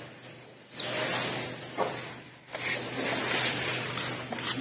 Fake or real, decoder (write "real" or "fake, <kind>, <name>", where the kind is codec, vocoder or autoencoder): real